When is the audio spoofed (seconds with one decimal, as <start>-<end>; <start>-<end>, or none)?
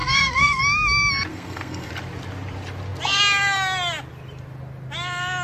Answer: 0.0-0.6; 1.3-1.9